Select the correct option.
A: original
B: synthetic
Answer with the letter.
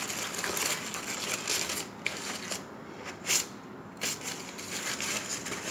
A